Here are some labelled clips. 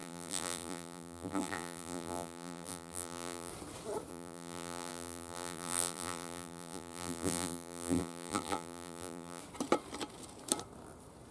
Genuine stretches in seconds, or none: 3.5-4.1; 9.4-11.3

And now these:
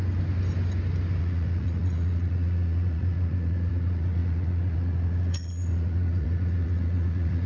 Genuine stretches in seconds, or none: 0.0-1.2

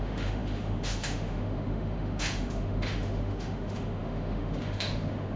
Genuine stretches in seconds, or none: none

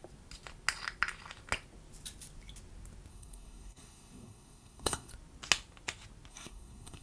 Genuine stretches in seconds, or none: 0.0-3.1; 5.1-6.3

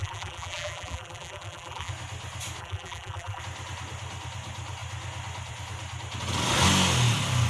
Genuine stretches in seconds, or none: 1.9-2.6; 3.4-7.5

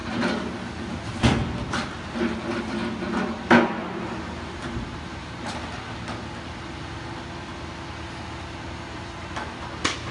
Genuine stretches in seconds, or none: 0.0-10.1